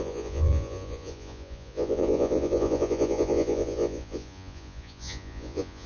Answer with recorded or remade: remade